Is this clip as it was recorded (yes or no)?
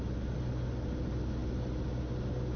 yes